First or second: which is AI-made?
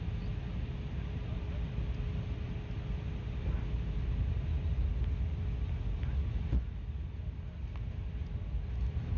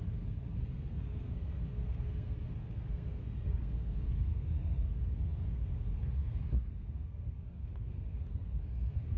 second